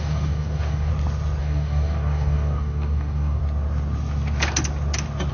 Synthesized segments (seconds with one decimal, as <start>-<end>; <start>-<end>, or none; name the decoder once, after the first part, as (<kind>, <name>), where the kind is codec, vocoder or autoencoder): 0.0-0.9 (codec, DAC); 1.4-3.4